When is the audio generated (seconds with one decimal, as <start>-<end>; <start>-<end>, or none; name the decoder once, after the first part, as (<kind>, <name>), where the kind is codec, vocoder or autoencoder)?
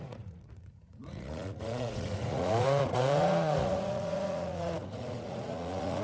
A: 0.0-6.0 (vocoder, Vocos)